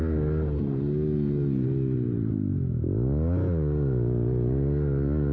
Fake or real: real